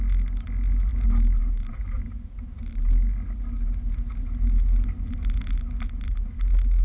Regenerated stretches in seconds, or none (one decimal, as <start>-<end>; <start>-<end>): 0.9-2.6